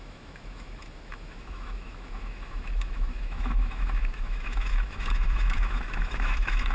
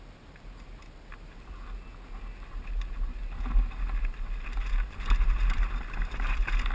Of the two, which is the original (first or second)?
second